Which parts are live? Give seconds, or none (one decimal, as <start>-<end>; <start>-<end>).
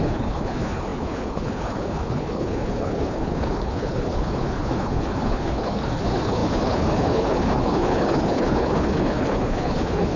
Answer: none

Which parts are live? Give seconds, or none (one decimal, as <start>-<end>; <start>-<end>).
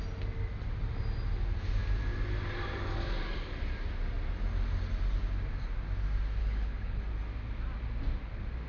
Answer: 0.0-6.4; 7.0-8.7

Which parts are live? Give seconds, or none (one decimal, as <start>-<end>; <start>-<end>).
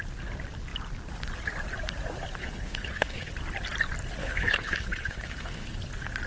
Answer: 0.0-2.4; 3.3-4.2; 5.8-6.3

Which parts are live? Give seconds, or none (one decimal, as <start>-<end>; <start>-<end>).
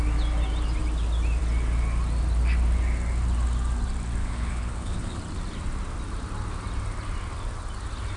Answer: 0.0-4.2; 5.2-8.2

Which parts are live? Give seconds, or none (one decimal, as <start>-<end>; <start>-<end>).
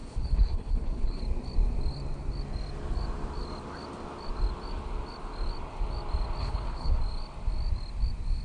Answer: 1.2-6.4; 7.0-8.4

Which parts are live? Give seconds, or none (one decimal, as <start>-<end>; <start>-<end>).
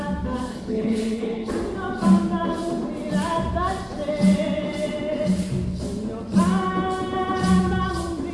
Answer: 0.0-0.5; 1.5-8.3